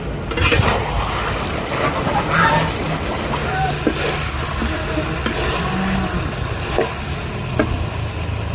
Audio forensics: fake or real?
real